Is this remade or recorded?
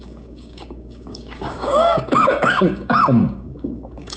remade